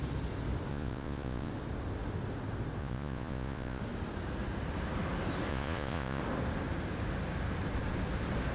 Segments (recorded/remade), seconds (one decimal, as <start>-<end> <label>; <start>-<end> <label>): 0.0-0.7 recorded; 0.7-1.5 remade; 1.5-2.8 recorded; 2.8-3.8 remade; 3.8-5.5 recorded; 5.5-6.2 remade; 6.2-8.5 recorded